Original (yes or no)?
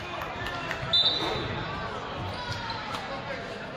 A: yes